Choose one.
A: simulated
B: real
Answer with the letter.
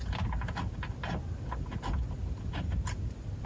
B